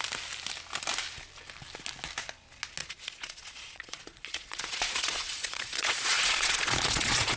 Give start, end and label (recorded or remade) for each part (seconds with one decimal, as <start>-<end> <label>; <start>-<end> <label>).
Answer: 0.0-2.8 recorded; 2.8-7.4 remade